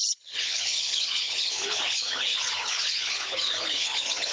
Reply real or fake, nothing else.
fake